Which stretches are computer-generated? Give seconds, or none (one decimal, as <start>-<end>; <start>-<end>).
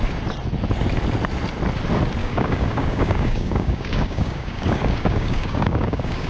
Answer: 2.2-6.3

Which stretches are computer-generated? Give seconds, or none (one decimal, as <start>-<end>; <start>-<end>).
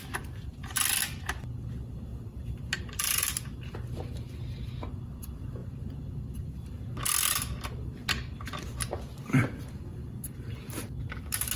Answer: 2.1-2.8; 9.9-11.0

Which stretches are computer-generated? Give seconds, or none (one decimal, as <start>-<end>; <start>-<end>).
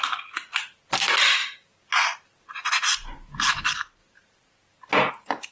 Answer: none